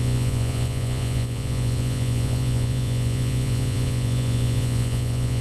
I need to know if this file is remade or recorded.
remade